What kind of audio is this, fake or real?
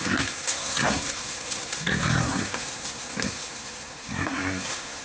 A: fake